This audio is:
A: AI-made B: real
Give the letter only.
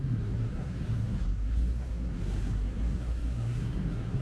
A